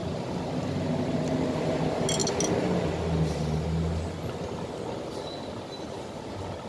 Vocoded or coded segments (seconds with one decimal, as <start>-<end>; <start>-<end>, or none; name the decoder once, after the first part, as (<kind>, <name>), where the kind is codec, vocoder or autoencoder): none